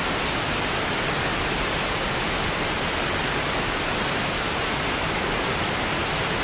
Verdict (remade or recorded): recorded